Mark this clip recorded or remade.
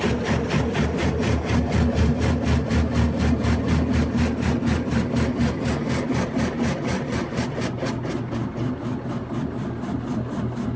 recorded